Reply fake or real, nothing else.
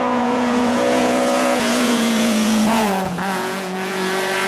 fake